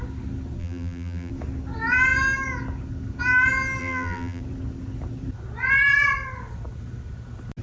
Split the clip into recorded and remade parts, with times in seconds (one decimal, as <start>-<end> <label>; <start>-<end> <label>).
0.0-0.6 recorded; 0.6-1.3 remade; 1.3-3.8 recorded; 3.8-4.4 remade; 4.4-7.6 recorded